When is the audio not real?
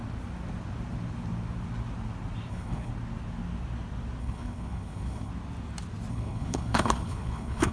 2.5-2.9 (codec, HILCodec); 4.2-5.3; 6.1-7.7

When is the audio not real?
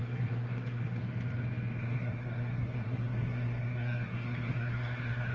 0.0-1.0 (codec, SNAC); 1.8-5.3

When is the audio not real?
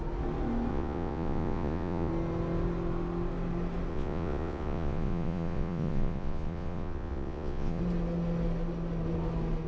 0.7-2.1 (vocoder, Vocos); 3.9-7.8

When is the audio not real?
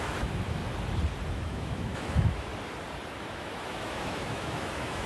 0.0-0.6 (autoencoder, DAC-VAE); 1.3-2.5; 3.3-5.1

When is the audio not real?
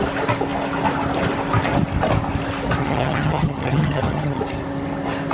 2.8-4.4 (vocoder, HiFi-GAN)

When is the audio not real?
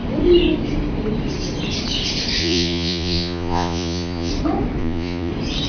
2.4-4.3 (vocoder, Vocos); 4.8-5.3